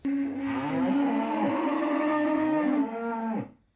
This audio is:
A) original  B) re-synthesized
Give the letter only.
A